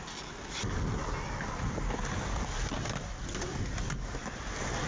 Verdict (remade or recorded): recorded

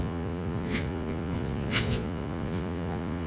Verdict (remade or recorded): remade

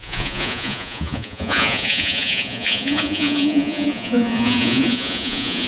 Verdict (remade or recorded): remade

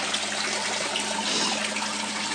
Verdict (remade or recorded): recorded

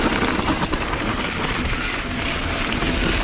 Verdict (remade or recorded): recorded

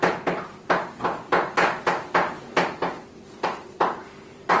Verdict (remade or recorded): recorded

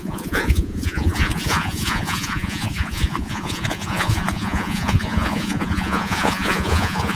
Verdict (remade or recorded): remade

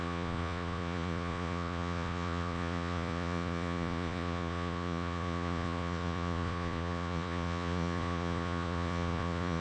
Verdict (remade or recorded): remade